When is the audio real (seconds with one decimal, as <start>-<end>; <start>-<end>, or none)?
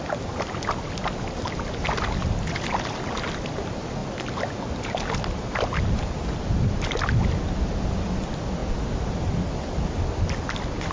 0.0-10.9